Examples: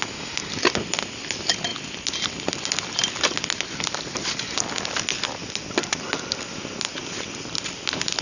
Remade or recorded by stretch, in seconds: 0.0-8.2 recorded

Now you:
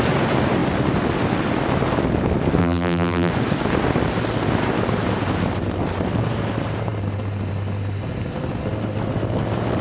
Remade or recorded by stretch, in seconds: 0.0-2.6 recorded; 2.6-3.3 remade; 3.3-9.8 recorded

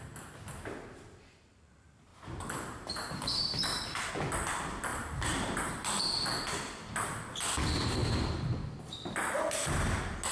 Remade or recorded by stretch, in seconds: 0.0-2.1 recorded; 2.1-4.1 remade; 4.1-4.9 recorded; 4.9-5.6 remade; 5.6-10.3 recorded

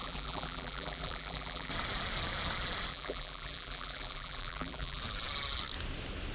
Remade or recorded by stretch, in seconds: 0.0-1.7 remade; 1.7-2.9 recorded; 2.9-5.0 remade; 5.0-6.3 recorded

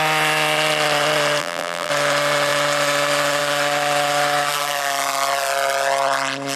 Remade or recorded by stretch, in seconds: 0.0-1.4 recorded; 1.4-1.9 remade; 1.9-6.6 recorded

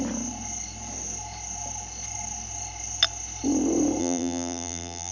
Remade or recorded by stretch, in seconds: 0.0-4.0 recorded; 4.0-5.1 remade

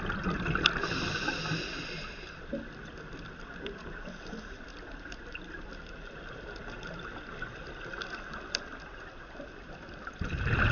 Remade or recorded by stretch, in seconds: 0.0-10.7 remade